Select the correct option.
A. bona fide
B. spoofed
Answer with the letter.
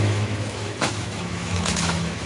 B